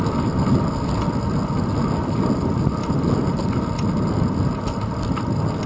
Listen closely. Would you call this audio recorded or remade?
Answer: recorded